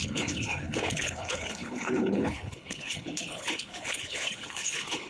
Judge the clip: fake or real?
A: fake